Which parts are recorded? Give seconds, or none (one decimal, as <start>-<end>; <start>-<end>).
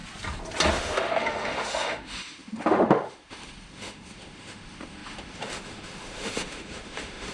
0.0-0.7